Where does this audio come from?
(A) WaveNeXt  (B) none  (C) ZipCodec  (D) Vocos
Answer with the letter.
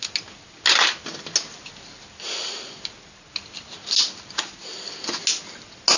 B